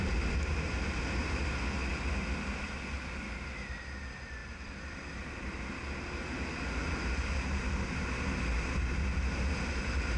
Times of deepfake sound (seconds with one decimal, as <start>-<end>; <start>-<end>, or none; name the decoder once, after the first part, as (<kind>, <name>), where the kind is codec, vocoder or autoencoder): none